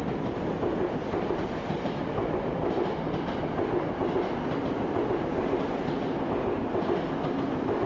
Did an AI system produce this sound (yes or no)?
no